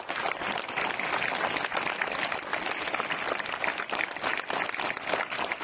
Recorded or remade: recorded